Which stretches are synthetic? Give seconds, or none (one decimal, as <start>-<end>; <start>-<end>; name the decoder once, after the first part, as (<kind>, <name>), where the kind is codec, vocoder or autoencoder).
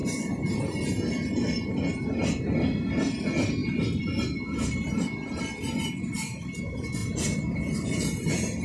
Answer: 0.0-0.5 (vocoder, BigVGAN v2)